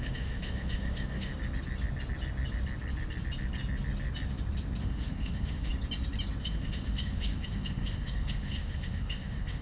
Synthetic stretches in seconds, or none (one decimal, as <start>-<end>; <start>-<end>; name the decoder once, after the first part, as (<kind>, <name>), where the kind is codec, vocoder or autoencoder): 0.0-1.3 (autoencoder, DAC-VAE); 4.8-5.7; 6.4-9.6